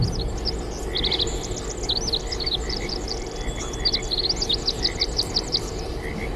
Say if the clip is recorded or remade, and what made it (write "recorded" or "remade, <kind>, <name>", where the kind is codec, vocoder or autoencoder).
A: recorded